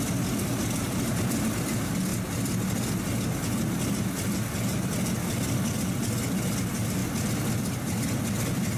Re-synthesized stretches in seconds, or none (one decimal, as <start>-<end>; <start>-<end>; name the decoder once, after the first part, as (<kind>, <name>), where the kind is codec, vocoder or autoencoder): 7.0-7.5 (vocoder, BigVGAN v2)